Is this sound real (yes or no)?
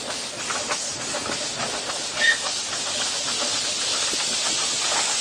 yes